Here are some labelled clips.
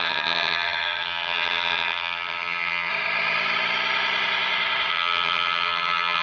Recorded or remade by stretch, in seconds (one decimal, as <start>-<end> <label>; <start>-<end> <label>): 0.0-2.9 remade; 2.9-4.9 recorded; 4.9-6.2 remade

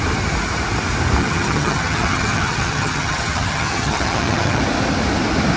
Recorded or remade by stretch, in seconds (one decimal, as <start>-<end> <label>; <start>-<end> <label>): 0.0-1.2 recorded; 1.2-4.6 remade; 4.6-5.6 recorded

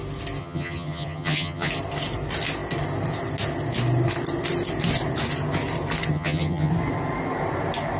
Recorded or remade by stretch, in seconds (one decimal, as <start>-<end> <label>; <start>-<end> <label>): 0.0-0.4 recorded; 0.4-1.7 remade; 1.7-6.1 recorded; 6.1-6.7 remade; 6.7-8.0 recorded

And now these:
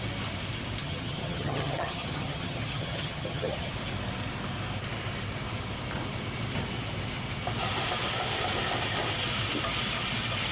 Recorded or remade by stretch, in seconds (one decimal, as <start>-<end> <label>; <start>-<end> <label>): 0.0-0.8 recorded; 0.8-3.7 remade; 3.7-10.5 recorded

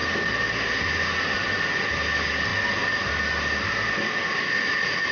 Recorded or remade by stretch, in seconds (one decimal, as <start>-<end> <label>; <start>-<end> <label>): 0.0-5.1 recorded